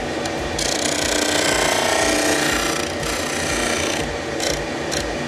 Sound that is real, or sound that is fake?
real